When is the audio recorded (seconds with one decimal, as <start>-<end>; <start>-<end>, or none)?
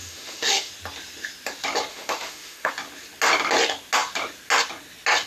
0.7-1.9; 2.7-5.3